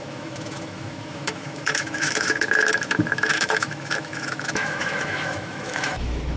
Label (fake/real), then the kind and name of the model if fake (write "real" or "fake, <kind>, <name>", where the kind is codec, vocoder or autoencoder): fake, autoencoder, DAC-VAE